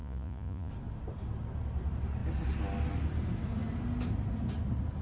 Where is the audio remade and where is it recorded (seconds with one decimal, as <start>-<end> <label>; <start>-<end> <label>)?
0.0-0.7 remade; 0.7-5.0 recorded